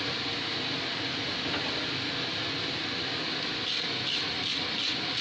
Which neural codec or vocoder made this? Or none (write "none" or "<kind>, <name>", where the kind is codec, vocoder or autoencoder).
none